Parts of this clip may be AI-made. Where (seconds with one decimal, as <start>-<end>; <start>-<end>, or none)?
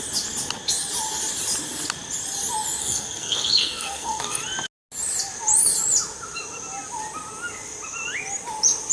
2.8-4.4